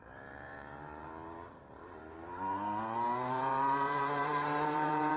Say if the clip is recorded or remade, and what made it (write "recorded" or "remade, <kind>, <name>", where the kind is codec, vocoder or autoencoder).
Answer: remade, vocoder, BigVGAN v2